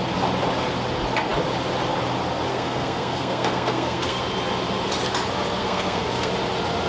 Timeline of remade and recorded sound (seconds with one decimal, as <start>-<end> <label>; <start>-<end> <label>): 0.0-2.5 recorded; 2.5-4.2 remade; 4.2-5.6 recorded; 5.6-6.3 remade; 6.3-6.9 recorded